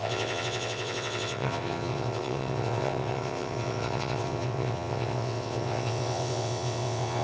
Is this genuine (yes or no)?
no